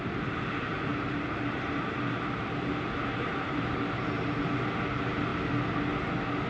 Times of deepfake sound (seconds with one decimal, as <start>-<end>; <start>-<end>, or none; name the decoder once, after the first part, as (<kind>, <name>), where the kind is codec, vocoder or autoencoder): 0.9-4.8 (vocoder, BigVGAN v2)